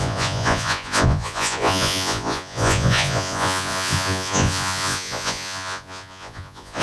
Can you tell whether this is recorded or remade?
remade